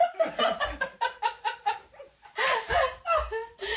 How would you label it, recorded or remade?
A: remade